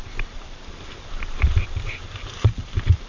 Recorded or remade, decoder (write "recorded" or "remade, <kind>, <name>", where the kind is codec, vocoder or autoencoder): remade, vocoder, BigVGAN v2